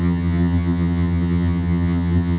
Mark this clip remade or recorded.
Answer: remade